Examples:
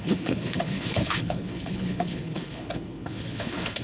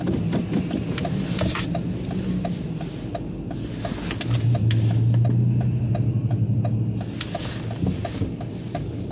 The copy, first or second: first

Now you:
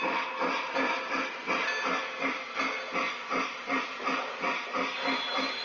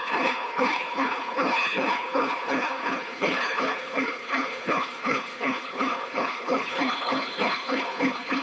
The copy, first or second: second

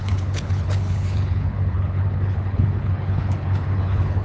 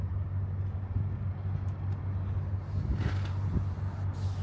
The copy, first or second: first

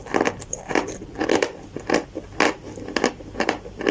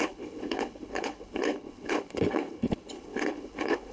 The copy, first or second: second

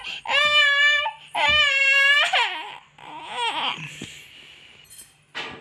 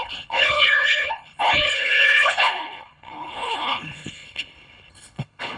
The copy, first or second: second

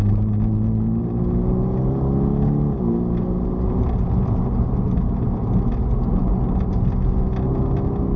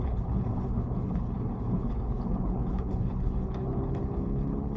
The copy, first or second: second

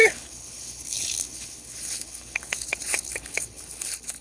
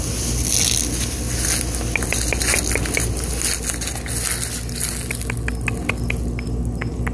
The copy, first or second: first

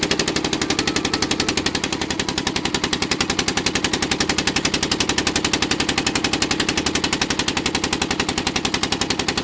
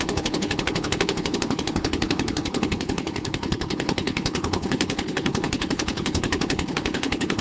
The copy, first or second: second